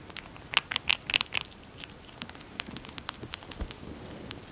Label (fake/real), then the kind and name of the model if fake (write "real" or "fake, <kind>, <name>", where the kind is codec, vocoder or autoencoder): real